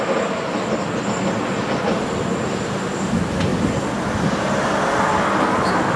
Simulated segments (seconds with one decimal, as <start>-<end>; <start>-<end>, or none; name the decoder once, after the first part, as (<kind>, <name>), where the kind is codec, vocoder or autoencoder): none